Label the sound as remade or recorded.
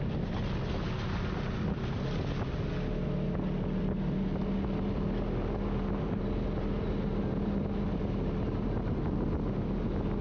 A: recorded